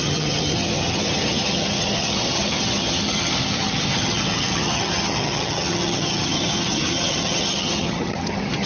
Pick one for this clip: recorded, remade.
remade